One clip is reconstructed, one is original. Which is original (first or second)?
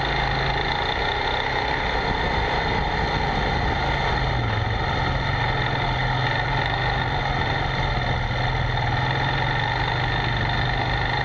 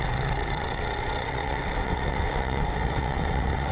first